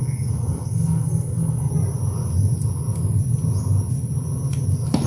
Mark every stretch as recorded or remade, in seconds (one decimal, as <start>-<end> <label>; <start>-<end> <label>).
0.0-1.7 remade; 1.7-5.1 recorded